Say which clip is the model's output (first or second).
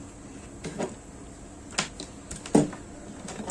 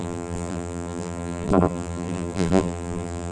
second